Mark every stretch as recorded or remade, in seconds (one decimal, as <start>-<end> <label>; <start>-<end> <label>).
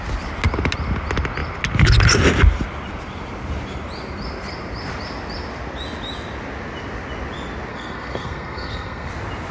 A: 0.0-7.7 recorded; 7.7-9.1 remade; 9.1-9.5 recorded